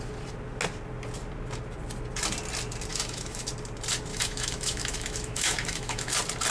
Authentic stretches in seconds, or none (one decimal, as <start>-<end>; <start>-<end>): 0.0-2.9; 3.5-4.1; 6.1-6.5